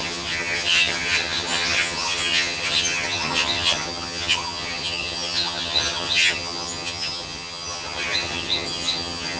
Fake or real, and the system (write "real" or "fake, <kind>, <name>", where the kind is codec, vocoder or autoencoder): fake, vocoder, HiFi-GAN